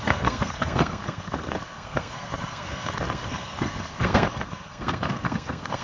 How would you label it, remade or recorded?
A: remade